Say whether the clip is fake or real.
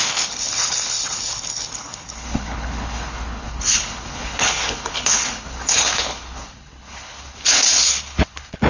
fake